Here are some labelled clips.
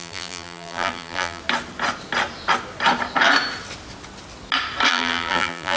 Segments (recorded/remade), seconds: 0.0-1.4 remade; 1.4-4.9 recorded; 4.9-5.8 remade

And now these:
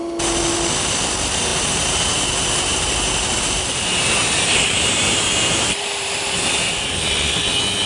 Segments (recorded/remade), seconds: 0.0-1.5 recorded; 1.5-6.2 remade; 6.2-7.9 recorded

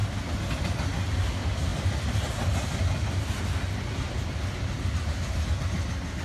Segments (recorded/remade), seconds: 0.0-6.2 recorded

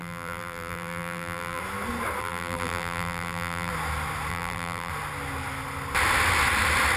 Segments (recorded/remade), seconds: 0.0-1.6 remade; 1.6-2.2 recorded; 2.2-3.7 remade; 3.7-4.3 recorded; 4.3-4.9 remade; 4.9-7.0 recorded

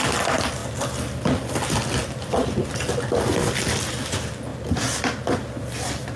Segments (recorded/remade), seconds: 0.0-6.2 recorded